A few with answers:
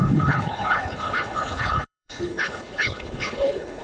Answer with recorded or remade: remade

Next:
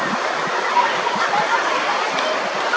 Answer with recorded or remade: recorded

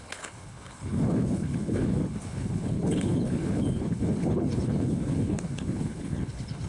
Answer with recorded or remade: remade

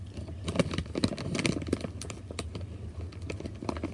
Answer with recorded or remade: recorded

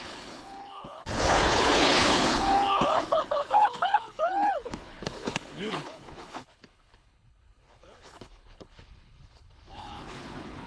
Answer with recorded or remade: remade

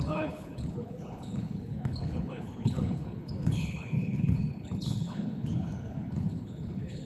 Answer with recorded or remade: remade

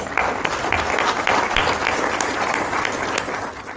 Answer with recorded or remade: recorded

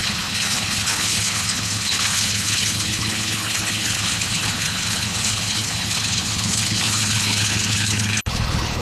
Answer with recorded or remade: remade